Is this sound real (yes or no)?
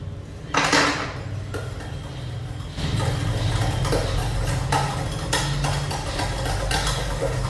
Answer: yes